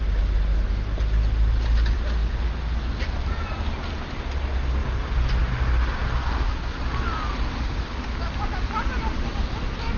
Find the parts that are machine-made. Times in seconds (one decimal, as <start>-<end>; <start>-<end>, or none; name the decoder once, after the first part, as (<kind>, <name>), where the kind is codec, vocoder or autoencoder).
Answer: 6.2-6.8 (codec, SNAC)